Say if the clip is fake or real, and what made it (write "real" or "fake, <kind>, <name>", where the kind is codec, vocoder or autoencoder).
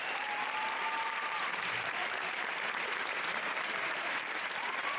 fake, vocoder, BigVGAN v2